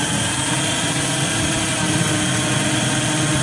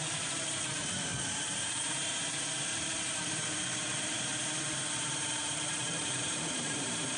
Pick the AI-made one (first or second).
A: second